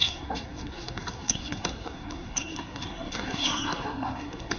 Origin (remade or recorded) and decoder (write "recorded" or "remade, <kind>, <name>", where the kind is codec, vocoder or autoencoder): remade, codec, SNAC